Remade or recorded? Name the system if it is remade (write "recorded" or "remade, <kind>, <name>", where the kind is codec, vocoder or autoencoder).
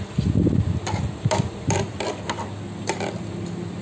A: recorded